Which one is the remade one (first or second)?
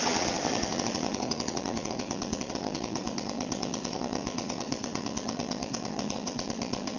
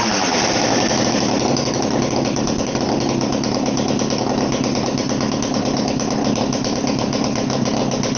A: first